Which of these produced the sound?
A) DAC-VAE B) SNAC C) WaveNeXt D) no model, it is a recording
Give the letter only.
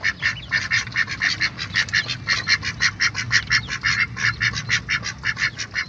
D